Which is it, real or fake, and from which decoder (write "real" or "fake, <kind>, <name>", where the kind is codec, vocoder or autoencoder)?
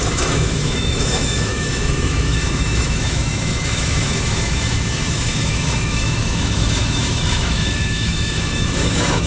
fake, autoencoder, DAC-VAE